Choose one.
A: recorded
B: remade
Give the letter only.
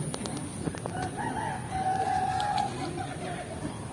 A